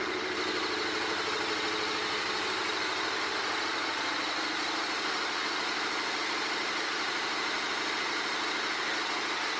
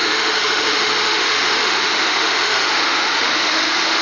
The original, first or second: first